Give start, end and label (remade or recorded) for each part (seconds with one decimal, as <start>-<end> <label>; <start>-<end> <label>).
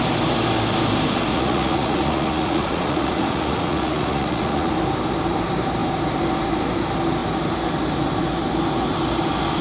0.0-1.3 recorded; 1.3-4.7 remade; 4.7-9.6 recorded